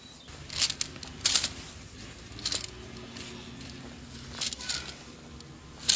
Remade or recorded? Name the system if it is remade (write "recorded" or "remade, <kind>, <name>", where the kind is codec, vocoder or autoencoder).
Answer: recorded